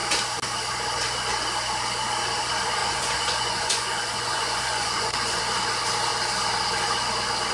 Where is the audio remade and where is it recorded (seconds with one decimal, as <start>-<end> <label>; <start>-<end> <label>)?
0.0-2.8 recorded; 2.8-5.4 remade; 5.4-7.5 recorded